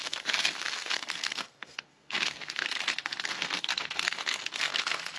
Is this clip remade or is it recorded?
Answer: remade